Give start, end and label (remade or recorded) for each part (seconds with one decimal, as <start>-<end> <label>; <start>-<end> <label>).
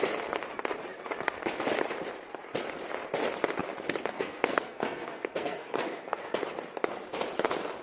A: 0.0-4.1 recorded; 4.1-6.4 remade; 6.4-7.8 recorded